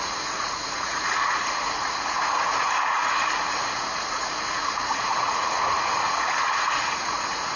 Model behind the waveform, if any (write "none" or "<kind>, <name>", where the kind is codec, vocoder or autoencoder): vocoder, Vocos